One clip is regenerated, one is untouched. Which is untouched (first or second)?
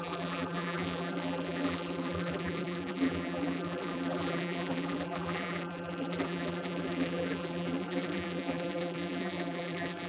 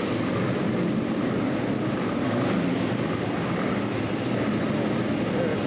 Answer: second